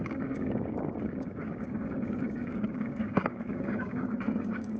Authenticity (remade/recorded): remade